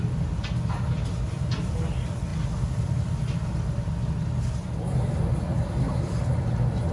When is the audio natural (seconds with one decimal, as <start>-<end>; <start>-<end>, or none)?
0.0-6.9